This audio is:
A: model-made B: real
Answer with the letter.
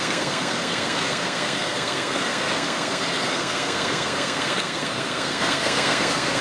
A